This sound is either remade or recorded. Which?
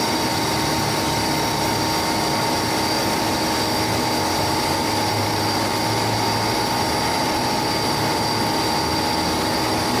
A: recorded